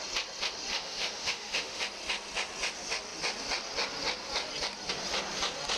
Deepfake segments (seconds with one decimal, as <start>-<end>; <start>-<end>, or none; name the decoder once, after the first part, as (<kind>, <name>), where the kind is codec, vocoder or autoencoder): 0.7-1.8 (autoencoder, DAC-VAE)

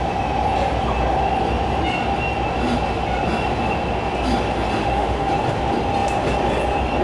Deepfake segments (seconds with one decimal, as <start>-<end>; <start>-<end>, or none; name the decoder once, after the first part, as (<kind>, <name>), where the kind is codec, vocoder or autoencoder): 4.8-5.3 (autoencoder, DAC-VAE)

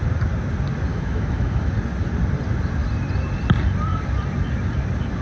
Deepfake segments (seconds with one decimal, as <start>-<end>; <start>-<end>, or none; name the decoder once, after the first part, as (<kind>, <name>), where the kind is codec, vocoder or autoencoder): 0.9-1.7 (autoencoder, DAC-VAE)